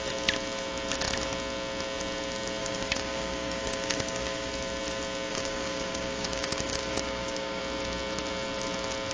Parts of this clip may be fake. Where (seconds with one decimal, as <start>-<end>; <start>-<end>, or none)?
2.6-4.5; 5.3-7.6